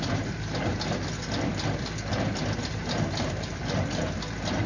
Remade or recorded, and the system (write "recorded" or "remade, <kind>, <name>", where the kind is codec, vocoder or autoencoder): recorded